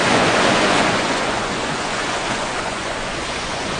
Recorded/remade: remade